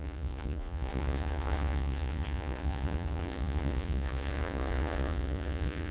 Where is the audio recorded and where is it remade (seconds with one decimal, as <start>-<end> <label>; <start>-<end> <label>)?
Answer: 0.0-5.9 remade